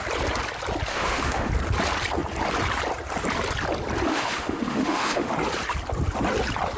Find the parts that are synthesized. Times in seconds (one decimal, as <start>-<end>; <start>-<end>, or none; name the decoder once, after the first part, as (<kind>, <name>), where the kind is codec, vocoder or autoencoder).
0.9-1.5 (autoencoder, DAC-VAE); 4.1-5.3